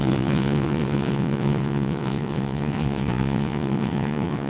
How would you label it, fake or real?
fake